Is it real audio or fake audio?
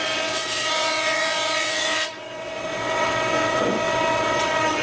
fake